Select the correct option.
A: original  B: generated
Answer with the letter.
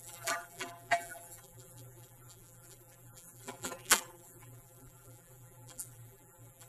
B